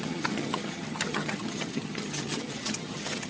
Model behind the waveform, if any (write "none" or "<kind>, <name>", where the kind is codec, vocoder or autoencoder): vocoder, HiFi-GAN